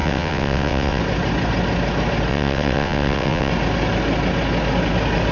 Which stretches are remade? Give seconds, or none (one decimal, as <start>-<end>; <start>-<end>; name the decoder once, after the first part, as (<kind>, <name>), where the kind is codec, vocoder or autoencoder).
0.0-1.0 (vocoder, WaveNeXt); 2.3-3.5